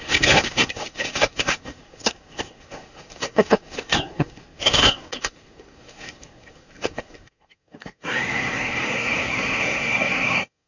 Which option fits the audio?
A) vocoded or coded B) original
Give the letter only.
A